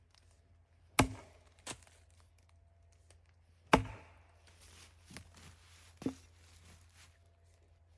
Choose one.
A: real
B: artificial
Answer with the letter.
A